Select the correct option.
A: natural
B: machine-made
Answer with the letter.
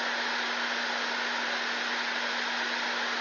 A